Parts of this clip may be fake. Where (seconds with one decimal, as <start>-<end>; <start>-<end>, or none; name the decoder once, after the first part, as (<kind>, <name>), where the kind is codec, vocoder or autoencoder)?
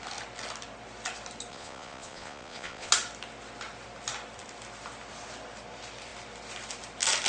1.5-2.9 (vocoder, Vocos)